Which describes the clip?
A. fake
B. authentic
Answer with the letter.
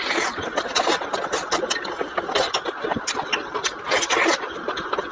B